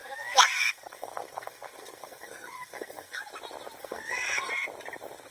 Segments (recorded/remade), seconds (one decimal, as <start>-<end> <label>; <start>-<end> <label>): 0.0-3.2 remade; 3.2-3.8 recorded; 3.8-4.5 remade; 4.5-5.3 recorded

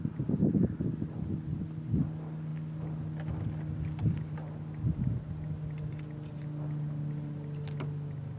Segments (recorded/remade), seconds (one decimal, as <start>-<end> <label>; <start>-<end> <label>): 0.0-8.4 recorded

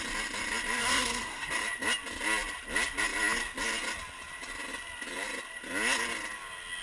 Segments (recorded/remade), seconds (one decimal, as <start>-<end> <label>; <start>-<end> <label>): 0.0-0.8 recorded; 0.8-1.5 remade; 1.5-6.8 recorded

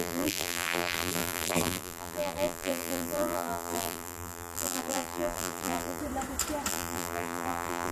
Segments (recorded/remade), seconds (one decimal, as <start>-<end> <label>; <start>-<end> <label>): 0.0-6.0 remade; 6.0-6.7 recorded; 6.7-7.9 remade